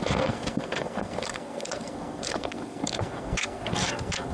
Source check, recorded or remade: remade